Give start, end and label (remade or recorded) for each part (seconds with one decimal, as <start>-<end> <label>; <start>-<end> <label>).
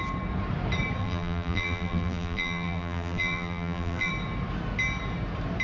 0.0-1.0 recorded; 1.0-4.1 remade; 4.1-5.6 recorded